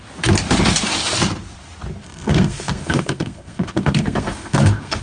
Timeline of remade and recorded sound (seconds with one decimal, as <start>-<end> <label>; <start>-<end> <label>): 0.0-2.0 recorded; 2.0-5.0 remade